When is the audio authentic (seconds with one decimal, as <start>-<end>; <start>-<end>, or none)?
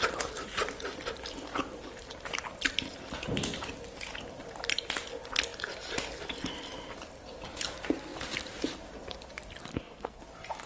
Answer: 0.0-9.7; 10.2-10.7